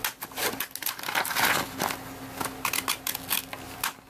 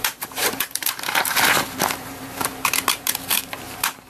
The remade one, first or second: second